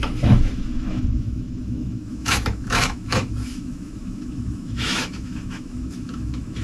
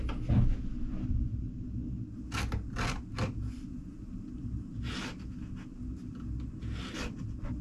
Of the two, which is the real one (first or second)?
second